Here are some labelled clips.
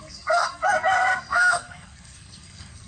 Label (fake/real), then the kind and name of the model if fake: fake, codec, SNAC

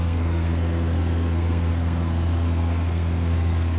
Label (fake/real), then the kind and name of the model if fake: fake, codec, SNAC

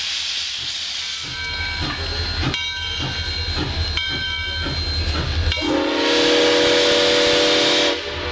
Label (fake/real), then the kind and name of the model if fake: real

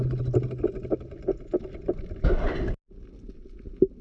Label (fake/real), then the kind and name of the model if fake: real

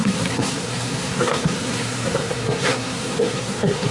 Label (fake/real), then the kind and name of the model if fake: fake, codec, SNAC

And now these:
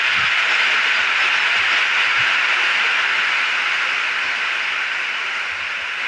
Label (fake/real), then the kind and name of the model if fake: real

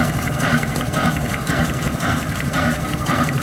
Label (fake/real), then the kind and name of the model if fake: fake, codec, SNAC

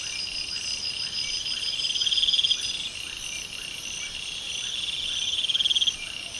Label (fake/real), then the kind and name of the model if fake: real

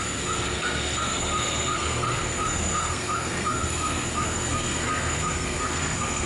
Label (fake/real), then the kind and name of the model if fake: fake, codec, SNAC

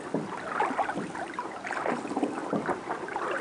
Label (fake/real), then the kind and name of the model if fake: real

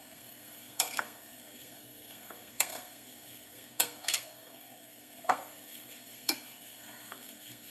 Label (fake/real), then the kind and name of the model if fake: fake, codec, SNAC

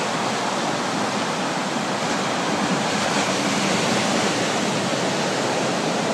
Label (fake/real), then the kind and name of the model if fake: real